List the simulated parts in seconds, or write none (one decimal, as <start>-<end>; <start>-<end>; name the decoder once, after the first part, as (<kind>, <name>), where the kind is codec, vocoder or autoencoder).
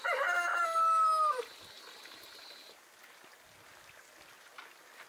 none